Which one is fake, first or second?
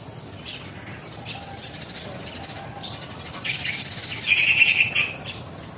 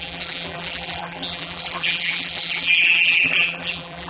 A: second